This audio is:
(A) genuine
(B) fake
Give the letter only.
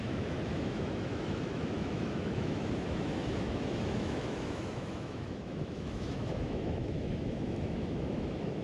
B